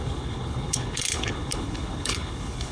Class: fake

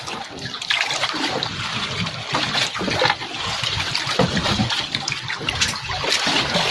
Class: real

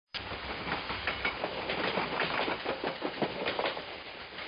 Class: real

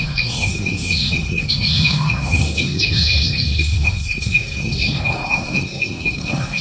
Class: fake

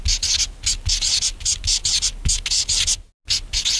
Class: real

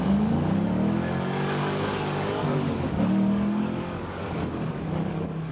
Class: fake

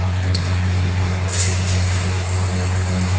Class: fake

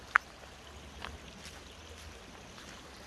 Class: real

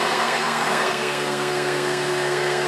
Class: fake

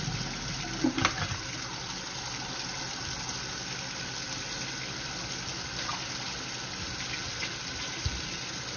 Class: real